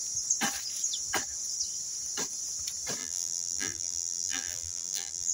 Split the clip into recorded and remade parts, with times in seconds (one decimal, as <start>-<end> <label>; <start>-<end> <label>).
0.0-3.0 recorded; 3.0-5.3 remade